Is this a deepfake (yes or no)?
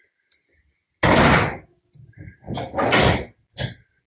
no